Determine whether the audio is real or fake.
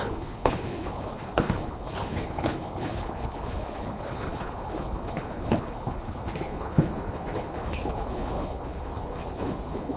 fake